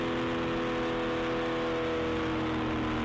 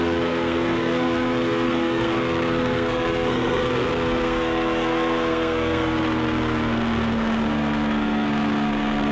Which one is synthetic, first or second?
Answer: second